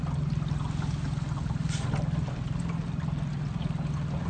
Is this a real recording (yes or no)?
yes